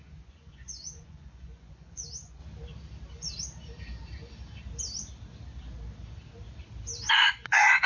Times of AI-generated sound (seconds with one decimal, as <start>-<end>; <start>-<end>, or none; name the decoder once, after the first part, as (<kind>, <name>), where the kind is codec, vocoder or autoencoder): 0.0-2.4 (vocoder, Vocos); 7.1-7.9